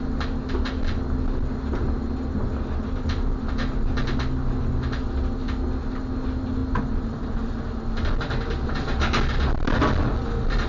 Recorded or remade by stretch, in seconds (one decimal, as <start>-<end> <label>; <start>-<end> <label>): 0.0-10.7 recorded